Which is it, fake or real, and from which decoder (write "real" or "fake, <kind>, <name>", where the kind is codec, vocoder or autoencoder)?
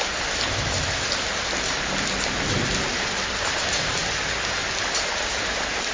real